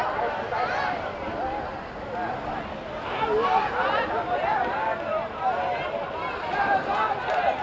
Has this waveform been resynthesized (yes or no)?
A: no